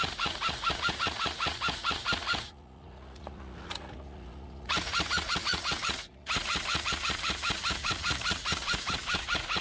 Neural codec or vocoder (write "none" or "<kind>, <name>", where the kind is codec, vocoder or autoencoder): vocoder, Vocos